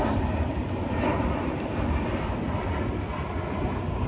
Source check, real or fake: real